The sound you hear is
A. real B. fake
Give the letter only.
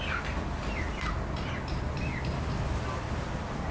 A